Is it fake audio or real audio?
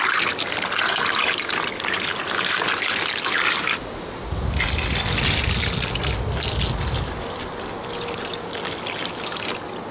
real